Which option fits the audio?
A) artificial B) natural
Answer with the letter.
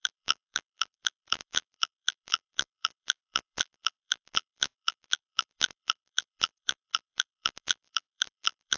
A